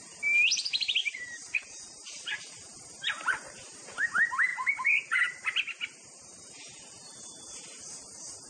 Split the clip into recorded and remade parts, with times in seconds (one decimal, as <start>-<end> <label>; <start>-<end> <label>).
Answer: 0.0-1.0 recorded; 1.0-2.4 remade; 2.4-8.5 recorded